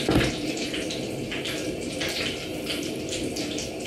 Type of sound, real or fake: real